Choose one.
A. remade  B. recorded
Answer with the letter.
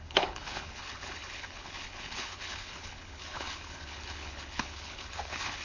A